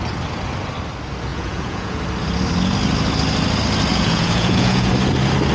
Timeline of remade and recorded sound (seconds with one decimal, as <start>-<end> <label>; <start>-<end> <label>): 0.0-1.3 recorded; 1.3-2.0 remade; 2.0-3.9 recorded; 3.9-4.9 remade; 4.9-5.5 recorded